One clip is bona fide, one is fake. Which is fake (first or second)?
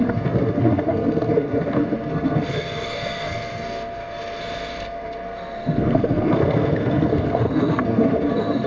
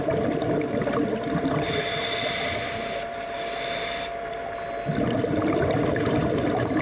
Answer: first